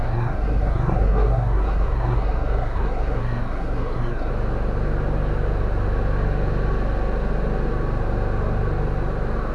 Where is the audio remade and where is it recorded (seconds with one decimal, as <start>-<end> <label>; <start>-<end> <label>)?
0.0-4.3 remade; 4.3-9.5 recorded